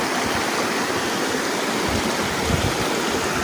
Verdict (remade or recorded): recorded